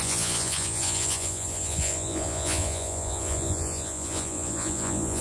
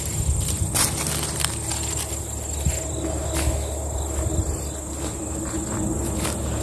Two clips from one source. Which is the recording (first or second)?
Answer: second